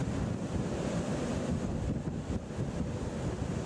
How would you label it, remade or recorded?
remade